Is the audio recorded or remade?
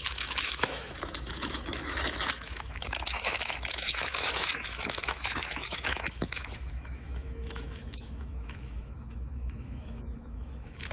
remade